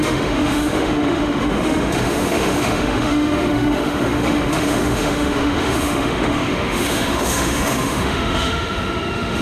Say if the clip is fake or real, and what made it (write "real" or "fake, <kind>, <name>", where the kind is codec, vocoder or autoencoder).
fake, autoencoder, DAC-VAE